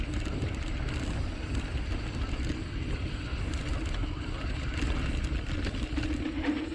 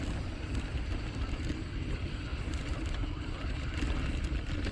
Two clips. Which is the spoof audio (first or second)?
second